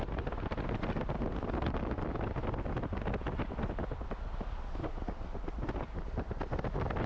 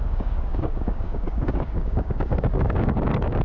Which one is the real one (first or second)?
first